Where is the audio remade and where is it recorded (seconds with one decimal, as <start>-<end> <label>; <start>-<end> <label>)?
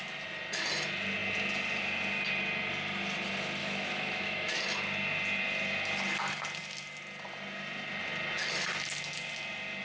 0.0-3.6 recorded; 3.6-4.6 remade; 4.6-9.8 recorded